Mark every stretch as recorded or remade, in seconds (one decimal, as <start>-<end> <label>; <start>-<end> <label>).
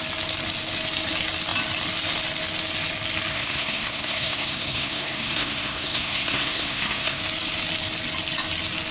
0.0-3.3 recorded; 3.3-7.2 remade; 7.2-8.9 recorded